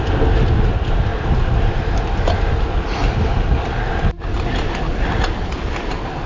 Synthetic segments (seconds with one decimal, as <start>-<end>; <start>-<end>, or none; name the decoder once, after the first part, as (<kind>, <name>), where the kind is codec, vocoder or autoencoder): none